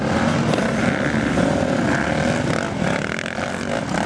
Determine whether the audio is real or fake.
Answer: real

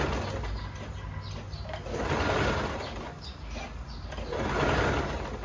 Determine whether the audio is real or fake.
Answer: real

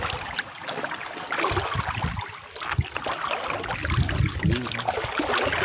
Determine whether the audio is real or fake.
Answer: real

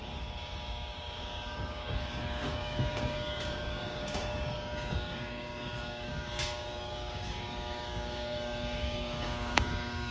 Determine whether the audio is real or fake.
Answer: fake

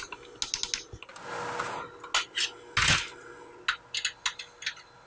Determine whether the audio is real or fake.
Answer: real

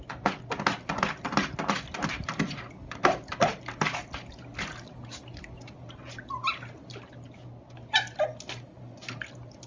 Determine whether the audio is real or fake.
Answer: real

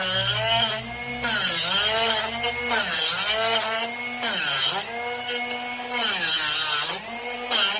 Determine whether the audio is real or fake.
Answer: real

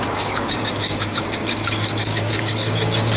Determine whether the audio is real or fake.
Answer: fake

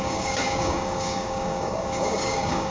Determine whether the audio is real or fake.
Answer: fake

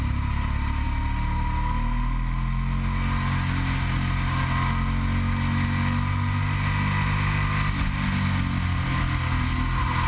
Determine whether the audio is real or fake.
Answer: real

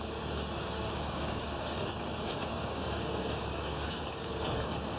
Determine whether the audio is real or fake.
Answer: fake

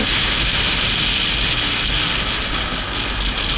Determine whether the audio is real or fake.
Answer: real